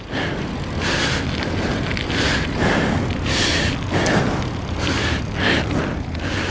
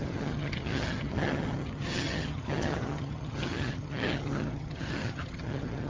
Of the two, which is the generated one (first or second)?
second